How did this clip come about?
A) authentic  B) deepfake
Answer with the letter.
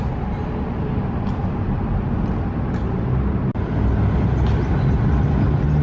A